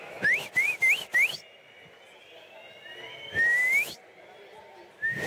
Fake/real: real